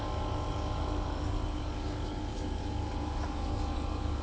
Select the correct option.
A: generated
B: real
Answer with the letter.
A